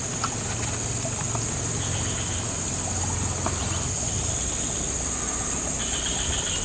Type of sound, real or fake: real